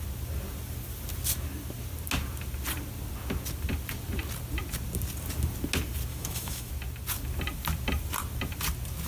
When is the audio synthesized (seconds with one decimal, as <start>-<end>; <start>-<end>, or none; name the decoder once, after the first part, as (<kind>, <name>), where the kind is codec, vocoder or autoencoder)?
6.1-6.7 (autoencoder, DAC-VAE)